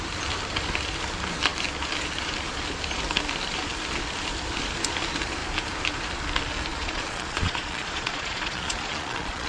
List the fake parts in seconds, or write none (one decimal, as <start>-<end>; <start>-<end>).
6.7-9.5